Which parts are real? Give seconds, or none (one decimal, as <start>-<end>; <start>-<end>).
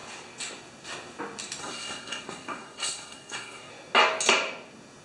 0.0-1.6; 3.7-5.0